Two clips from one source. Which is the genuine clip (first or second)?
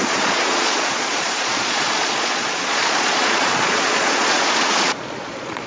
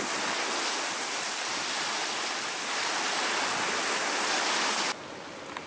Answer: second